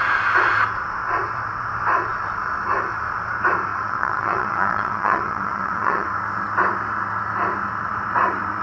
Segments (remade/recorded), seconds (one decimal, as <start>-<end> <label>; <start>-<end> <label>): 0.0-3.7 recorded; 3.7-6.1 remade; 6.1-8.6 recorded